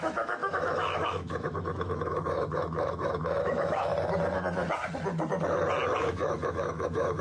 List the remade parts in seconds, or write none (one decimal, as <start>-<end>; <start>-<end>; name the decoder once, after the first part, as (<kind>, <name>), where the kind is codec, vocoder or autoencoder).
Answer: 0.0-3.9 (autoencoder, DAC-VAE); 6.0-7.2